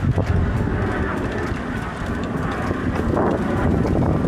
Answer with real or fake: real